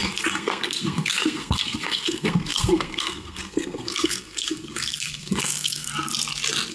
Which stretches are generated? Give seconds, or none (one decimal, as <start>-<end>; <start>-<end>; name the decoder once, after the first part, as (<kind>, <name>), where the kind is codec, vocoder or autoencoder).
0.0-5.9 (codec, SNAC)